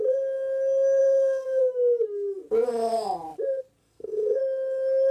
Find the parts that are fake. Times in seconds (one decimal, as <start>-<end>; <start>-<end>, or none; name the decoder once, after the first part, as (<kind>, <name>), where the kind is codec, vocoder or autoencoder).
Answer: 1.0-1.6 (codec, SNAC); 3.8-4.4